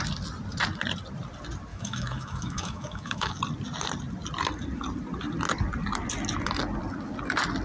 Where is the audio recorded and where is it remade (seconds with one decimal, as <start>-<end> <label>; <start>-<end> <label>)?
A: 0.0-1.7 recorded; 1.7-3.4 remade; 3.4-7.6 recorded